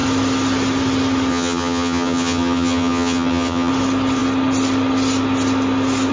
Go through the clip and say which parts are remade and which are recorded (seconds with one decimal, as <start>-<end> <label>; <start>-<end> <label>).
0.0-1.3 recorded; 1.3-3.7 remade; 3.7-6.1 recorded